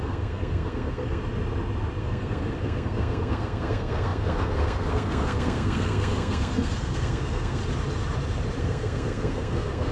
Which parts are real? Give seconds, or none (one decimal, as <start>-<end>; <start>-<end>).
1.2-2.0; 7.6-8.6